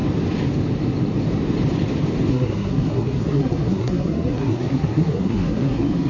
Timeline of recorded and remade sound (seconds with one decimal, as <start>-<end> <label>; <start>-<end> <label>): 0.0-2.3 recorded; 2.3-6.1 remade